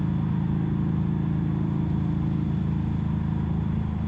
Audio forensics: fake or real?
real